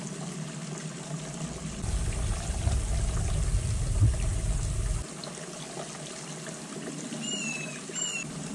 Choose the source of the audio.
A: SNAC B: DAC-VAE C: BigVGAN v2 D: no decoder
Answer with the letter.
D